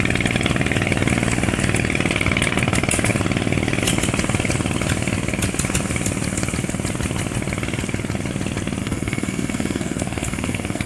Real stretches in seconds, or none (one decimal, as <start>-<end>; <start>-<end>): 0.0-8.8